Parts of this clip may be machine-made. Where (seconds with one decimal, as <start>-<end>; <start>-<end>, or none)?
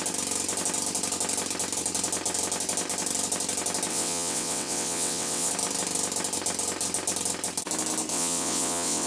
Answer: 3.9-5.5; 8.1-9.1